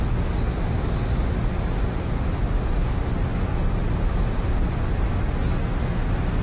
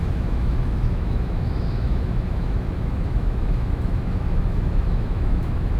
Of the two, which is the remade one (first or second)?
second